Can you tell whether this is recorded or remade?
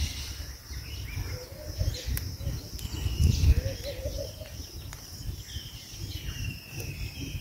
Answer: remade